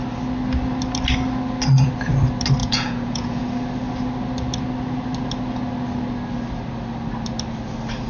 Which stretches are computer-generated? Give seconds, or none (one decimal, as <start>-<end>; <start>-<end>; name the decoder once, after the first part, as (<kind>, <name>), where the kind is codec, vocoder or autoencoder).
2.6-3.4 (vocoder, Vocos)